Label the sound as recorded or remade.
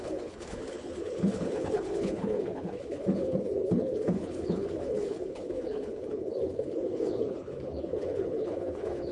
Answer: remade